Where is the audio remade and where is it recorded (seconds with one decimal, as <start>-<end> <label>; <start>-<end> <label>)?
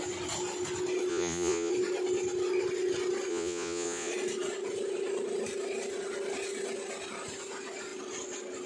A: 0.0-1.1 recorded; 1.1-1.7 remade; 1.7-3.3 recorded; 3.3-4.1 remade; 4.1-8.7 recorded